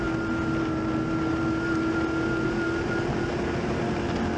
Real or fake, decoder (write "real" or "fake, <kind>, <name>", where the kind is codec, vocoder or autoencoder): real